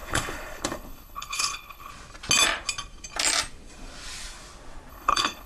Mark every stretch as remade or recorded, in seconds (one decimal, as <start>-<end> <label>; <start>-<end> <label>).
0.0-1.9 remade; 1.9-4.9 recorded; 4.9-5.5 remade